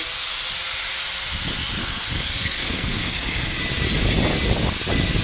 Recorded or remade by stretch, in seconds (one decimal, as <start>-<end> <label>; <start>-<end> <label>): 0.0-1.8 recorded; 1.8-3.6 remade; 3.6-5.2 recorded